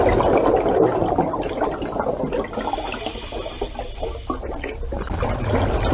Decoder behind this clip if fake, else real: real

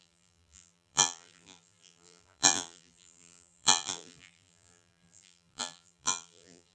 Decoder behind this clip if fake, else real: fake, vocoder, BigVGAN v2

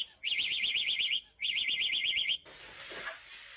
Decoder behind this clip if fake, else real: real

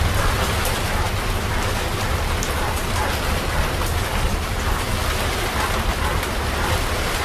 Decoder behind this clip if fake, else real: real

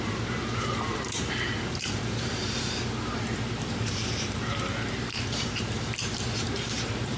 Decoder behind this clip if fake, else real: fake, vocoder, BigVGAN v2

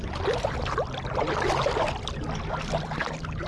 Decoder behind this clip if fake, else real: real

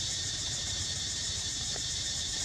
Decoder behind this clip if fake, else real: fake, vocoder, BigVGAN v2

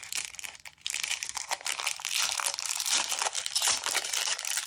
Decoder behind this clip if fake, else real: fake, vocoder, BigVGAN v2